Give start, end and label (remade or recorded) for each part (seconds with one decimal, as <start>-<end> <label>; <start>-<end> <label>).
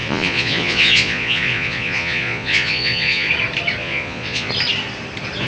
0.0-3.3 remade; 3.3-3.8 recorded; 3.8-4.5 remade; 4.5-5.5 recorded